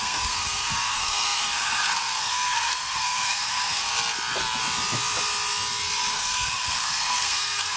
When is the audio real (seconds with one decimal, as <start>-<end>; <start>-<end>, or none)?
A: 3.9-6.1